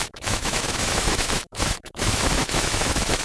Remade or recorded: remade